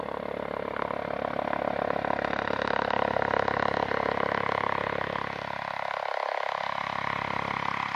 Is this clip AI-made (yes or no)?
no